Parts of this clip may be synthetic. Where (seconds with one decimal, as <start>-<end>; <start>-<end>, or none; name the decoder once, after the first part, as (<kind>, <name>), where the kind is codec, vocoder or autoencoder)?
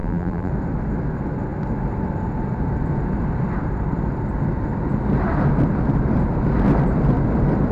0.0-0.5 (vocoder, BigVGAN v2)